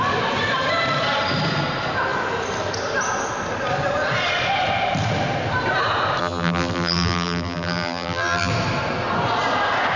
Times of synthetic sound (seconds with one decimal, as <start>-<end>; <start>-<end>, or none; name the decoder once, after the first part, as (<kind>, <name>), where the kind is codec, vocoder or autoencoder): 6.2-8.5 (vocoder, BigVGAN v2)